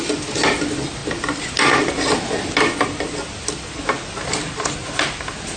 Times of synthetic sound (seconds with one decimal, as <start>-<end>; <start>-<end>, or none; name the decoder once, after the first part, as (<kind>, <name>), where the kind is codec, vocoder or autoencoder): none